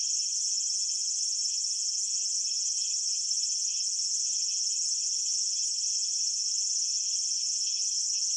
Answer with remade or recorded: remade